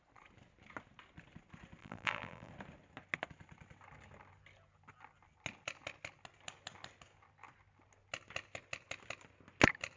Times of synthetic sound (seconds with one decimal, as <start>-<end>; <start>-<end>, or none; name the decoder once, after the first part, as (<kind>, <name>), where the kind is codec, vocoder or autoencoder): 1.8-2.5 (vocoder, BigVGAN v2)